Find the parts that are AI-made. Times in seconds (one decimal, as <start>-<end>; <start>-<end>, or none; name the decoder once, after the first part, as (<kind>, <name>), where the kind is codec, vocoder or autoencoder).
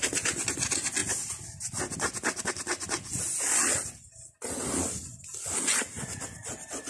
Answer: none